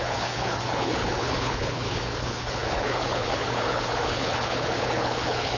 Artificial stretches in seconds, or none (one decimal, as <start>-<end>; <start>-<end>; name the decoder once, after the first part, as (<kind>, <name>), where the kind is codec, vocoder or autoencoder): 0.0-5.6 (codec, HILCodec)